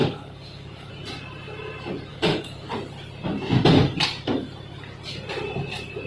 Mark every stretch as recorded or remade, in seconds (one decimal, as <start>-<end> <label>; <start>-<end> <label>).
0.0-0.9 remade; 0.9-2.1 recorded; 2.1-2.7 remade; 2.7-6.1 recorded